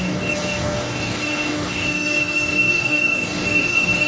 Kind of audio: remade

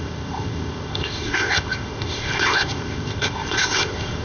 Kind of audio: remade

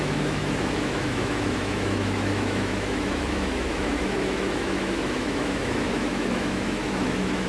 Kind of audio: remade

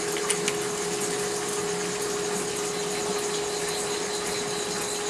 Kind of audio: recorded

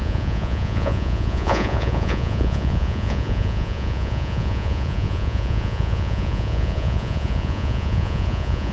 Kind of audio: remade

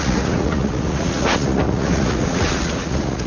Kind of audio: remade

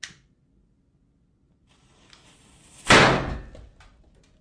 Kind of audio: recorded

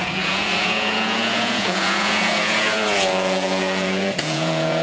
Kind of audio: remade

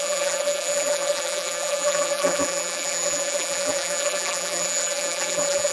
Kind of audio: remade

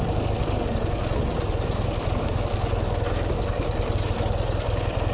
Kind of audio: recorded